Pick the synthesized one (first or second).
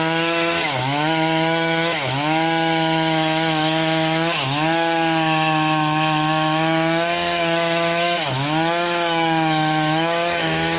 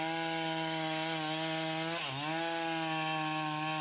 first